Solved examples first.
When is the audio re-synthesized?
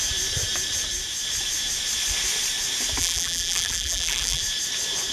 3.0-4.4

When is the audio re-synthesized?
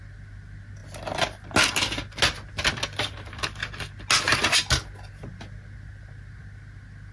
none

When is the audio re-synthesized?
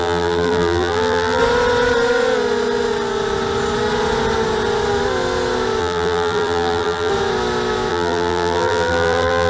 0.0-1.4; 5.8-7.1; 7.9-9.5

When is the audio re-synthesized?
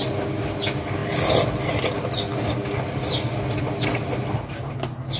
none